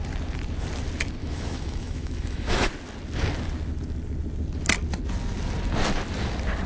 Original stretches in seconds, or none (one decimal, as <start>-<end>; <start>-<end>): 0.0-1.2; 2.7-6.7